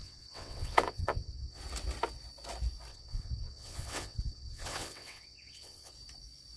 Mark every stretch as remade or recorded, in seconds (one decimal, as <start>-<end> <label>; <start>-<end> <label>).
0.0-1.6 remade; 1.6-2.9 recorded; 2.9-5.9 remade; 5.9-6.6 recorded